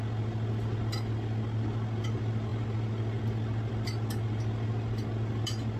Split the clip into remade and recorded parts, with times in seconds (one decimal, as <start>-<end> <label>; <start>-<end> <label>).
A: 0.0-5.8 recorded